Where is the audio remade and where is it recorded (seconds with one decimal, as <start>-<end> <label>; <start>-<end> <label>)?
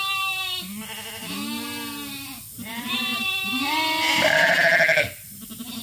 0.0-5.8 recorded